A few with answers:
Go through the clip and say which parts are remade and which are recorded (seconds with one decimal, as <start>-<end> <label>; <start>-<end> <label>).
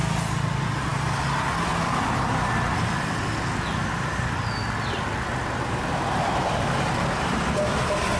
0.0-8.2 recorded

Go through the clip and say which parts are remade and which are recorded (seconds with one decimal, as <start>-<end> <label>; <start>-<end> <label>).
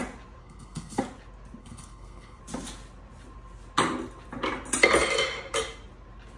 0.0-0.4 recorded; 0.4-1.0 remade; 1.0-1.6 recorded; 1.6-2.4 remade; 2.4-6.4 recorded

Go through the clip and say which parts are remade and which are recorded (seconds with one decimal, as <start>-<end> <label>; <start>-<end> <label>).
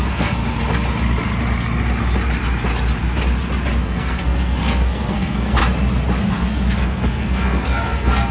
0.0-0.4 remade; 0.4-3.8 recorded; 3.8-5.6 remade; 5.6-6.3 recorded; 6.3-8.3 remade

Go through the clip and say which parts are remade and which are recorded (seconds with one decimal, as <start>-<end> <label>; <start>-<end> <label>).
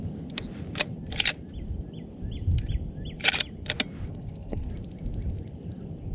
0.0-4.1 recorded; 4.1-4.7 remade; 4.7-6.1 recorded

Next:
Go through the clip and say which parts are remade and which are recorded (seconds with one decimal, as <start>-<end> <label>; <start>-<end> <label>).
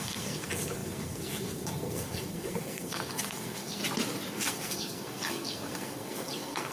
0.0-3.8 remade; 3.8-4.3 recorded; 4.3-6.7 remade